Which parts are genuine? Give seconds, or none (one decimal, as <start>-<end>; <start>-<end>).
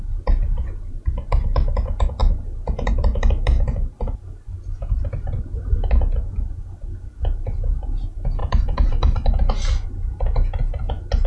0.0-8.4; 9.3-11.3